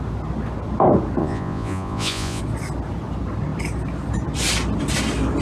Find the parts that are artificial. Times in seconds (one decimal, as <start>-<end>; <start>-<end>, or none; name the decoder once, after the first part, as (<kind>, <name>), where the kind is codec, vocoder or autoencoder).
1.2-2.4 (vocoder, Vocos)